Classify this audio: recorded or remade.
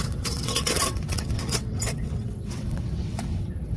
remade